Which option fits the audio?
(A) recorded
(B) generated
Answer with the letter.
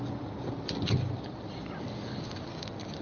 A